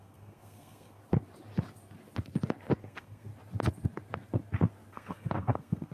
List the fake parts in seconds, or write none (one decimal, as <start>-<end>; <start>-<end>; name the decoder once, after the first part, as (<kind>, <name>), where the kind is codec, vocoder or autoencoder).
0.0-1.0 (codec, SNAC); 2.8-3.3; 4.9-5.9